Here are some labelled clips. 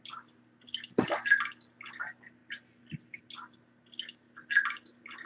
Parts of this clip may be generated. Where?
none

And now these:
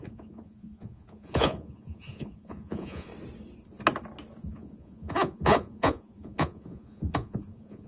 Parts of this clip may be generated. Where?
0.0-3.1 (vocoder, Vocos); 4.4-7.9

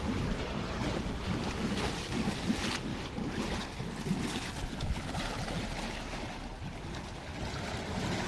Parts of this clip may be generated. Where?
none

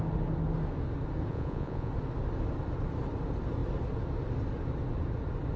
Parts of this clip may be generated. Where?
1.3-1.9 (vocoder, Vocos)

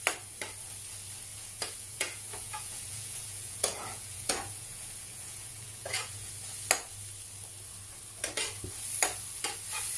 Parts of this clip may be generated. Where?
1.3-6.3 (vocoder, Vocos)

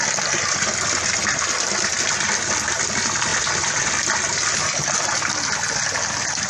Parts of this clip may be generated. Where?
none

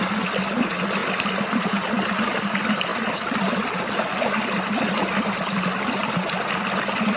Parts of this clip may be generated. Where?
none

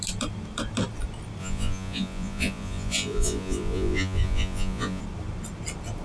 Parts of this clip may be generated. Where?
1.4-5.0 (vocoder, Vocos)